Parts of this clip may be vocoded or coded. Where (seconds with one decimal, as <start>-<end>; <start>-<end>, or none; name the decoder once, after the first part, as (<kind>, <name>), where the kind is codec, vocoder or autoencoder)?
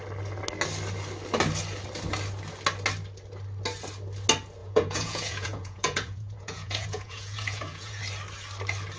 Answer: 4.6-8.0 (vocoder, Vocos)